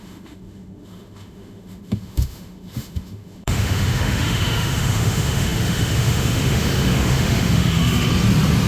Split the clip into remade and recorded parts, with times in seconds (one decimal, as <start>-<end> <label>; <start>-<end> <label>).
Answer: 0.0-8.1 remade; 8.1-8.7 recorded